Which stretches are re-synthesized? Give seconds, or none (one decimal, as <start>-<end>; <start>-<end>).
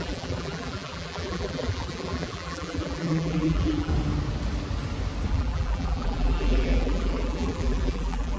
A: 0.0-3.9; 5.3-8.4